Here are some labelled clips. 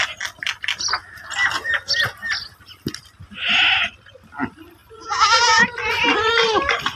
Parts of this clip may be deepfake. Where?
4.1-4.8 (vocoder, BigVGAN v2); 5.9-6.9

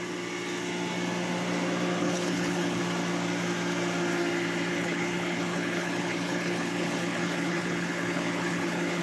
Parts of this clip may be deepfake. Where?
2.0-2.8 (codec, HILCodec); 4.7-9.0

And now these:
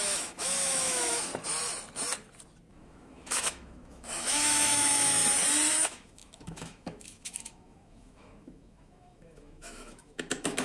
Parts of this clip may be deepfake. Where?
0.0-1.3 (autoencoder, DAC-VAE); 2.7-5.2; 5.7-10.6

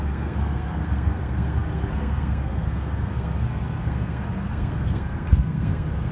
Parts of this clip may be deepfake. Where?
0.0-6.1 (codec, SNAC)

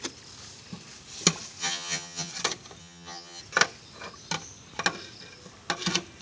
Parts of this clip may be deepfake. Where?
1.6-2.3 (vocoder, HiFi-GAN); 2.8-3.4

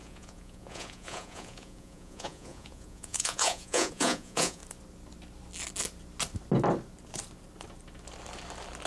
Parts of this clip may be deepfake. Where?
0.0-4.6 (vocoder, Vocos)